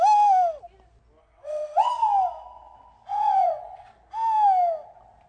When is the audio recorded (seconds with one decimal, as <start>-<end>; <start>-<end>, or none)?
0.0-1.2; 1.9-3.1; 3.9-5.3